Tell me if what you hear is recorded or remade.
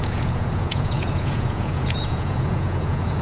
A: remade